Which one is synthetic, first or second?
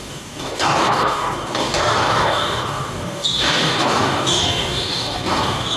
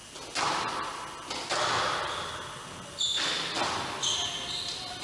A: first